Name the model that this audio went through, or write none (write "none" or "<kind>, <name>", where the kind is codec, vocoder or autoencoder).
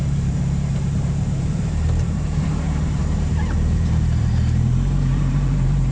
vocoder, BigVGAN v2